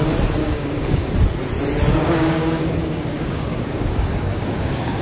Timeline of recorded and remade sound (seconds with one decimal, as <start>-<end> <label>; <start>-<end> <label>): 0.0-0.4 recorded; 0.4-1.1 remade; 1.1-1.9 recorded; 1.9-5.0 remade

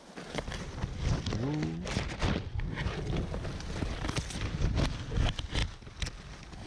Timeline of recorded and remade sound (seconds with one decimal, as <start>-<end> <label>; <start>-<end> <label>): 0.0-6.7 recorded

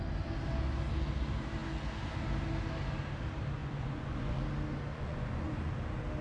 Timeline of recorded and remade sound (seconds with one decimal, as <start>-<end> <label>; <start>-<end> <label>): 0.0-3.6 recorded; 3.6-4.4 remade; 4.4-4.9 recorded; 4.9-5.7 remade; 5.7-6.2 recorded

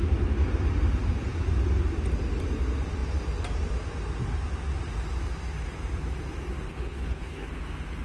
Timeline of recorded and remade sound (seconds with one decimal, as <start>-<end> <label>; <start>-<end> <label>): 0.0-6.7 recorded; 6.7-7.5 remade; 7.5-8.0 recorded

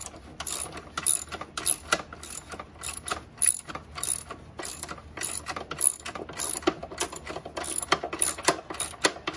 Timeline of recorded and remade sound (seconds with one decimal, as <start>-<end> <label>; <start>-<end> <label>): 0.0-9.4 recorded

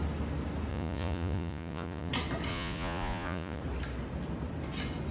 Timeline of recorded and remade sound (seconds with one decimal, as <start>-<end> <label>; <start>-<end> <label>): 0.0-0.7 recorded; 0.7-2.1 remade; 2.1-2.5 recorded; 2.5-3.6 remade; 3.6-5.1 recorded